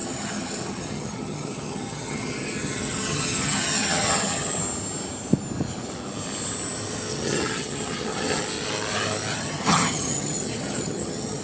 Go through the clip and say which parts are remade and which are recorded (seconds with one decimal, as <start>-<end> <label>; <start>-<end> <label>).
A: 0.0-4.6 remade; 4.6-7.1 recorded; 7.1-8.4 remade; 8.4-9.3 recorded; 9.3-11.4 remade